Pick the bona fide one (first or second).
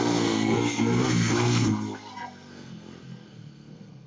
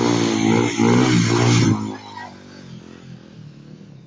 second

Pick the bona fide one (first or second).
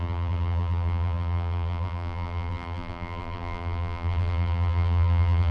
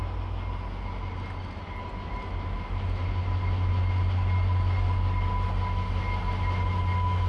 second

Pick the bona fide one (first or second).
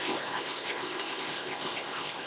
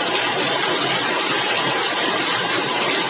second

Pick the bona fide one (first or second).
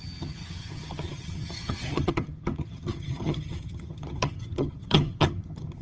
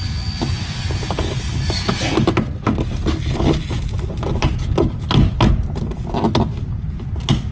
second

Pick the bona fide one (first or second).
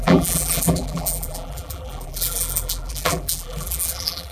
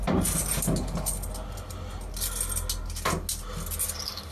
second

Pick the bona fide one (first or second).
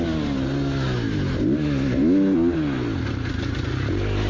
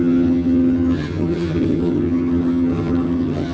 first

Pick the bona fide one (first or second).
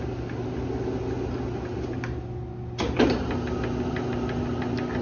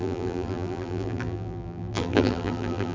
first